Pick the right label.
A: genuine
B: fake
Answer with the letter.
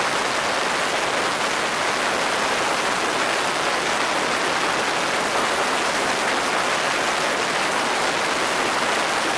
A